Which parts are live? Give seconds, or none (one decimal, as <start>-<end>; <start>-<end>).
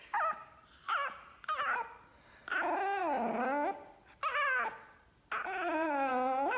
0.0-5.4; 6.1-6.6